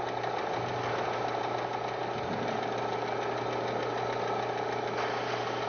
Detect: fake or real real